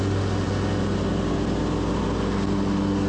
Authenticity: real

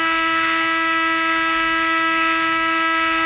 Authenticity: fake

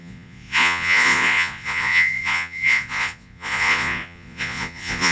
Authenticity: fake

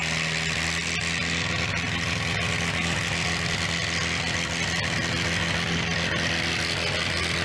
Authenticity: real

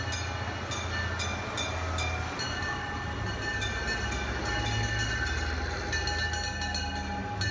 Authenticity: real